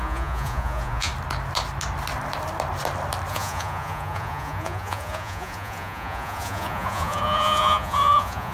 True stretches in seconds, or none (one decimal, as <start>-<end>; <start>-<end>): 1.1-3.3